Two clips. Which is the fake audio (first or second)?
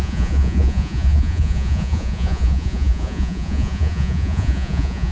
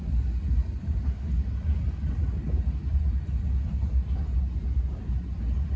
first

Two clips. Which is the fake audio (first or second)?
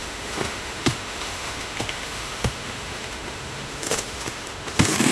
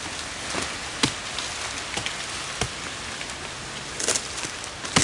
first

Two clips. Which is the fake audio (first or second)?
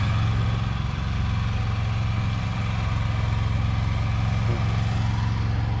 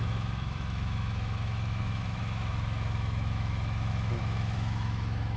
second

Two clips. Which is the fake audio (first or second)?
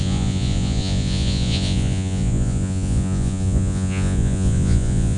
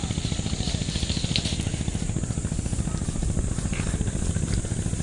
first